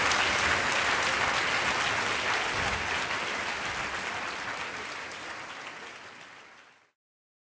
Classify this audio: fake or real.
real